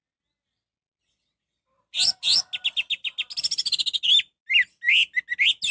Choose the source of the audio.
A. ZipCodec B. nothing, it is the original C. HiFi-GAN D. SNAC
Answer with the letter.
B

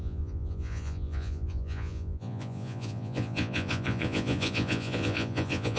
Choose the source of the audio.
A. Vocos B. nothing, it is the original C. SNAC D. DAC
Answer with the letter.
A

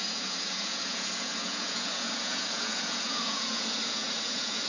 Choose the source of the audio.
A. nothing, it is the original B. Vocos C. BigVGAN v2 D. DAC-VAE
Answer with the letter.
B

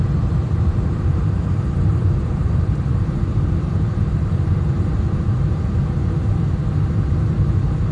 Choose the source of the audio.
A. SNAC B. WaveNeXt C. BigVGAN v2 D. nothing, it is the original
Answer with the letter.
C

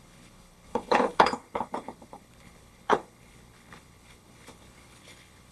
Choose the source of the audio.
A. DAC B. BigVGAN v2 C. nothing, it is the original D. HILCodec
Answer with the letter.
D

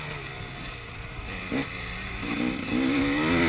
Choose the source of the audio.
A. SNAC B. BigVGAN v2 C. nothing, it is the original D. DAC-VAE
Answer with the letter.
C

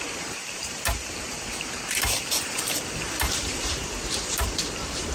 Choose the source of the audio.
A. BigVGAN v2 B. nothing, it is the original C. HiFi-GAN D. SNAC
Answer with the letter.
A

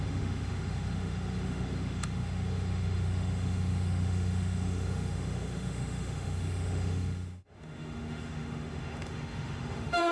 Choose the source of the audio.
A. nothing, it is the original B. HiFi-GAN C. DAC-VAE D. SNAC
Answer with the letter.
C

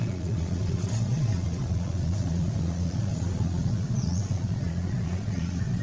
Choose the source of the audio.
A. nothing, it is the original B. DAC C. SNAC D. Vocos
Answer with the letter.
D